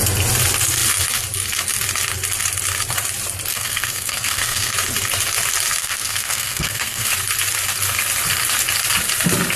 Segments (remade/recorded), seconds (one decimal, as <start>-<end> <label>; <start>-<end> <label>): 0.0-3.5 recorded; 3.5-4.7 remade; 4.7-5.8 recorded; 5.8-7.1 remade; 7.1-9.6 recorded